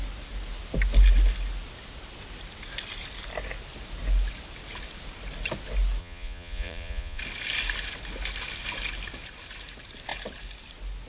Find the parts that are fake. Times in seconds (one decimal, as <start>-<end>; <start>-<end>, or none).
6.0-7.2